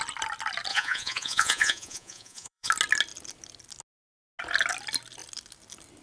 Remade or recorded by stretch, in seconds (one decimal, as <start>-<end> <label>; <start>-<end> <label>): 0.0-0.7 recorded; 0.7-2.7 remade; 2.7-6.0 recorded